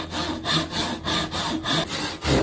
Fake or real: real